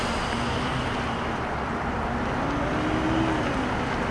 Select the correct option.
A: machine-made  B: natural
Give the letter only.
B